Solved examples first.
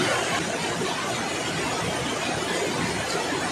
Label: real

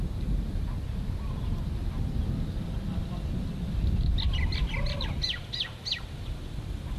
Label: real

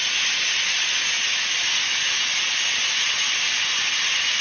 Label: real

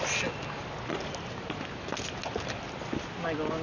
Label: real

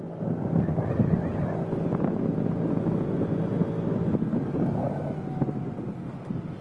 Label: real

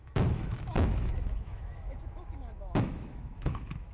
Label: fake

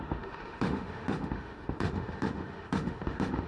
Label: fake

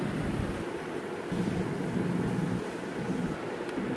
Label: real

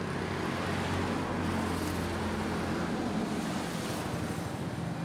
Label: real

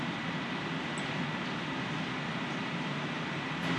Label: real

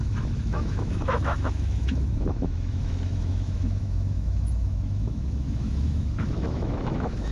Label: fake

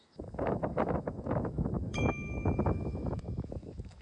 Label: fake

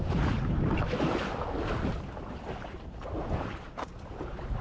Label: real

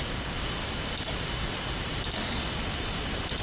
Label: real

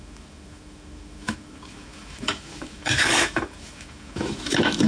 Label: fake